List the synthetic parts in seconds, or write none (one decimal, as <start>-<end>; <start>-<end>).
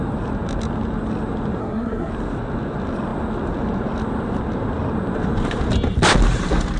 1.6-2.1